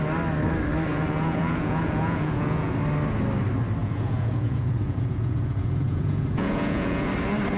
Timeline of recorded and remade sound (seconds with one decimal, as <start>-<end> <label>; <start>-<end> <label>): 0.0-0.9 recorded; 0.9-2.7 remade; 2.7-3.8 recorded; 3.8-7.1 remade; 7.1-7.6 recorded